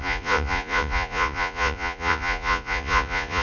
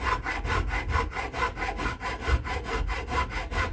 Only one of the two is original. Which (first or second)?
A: second